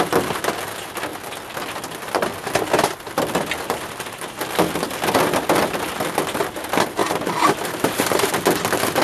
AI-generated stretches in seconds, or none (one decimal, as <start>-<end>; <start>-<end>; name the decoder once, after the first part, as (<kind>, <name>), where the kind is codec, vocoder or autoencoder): 7.0-8.3 (vocoder, BigVGAN v2)